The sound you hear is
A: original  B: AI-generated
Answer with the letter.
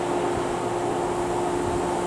A